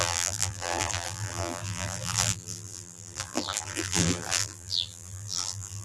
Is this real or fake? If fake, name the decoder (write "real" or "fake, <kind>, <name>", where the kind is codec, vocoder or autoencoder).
fake, vocoder, BigVGAN v2